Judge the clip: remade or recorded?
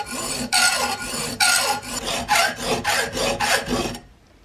recorded